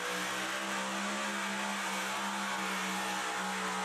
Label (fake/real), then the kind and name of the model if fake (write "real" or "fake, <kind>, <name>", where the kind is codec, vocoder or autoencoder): real